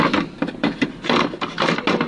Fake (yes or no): no